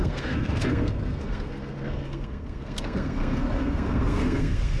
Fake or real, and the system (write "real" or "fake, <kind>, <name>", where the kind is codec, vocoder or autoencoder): fake, codec, SNAC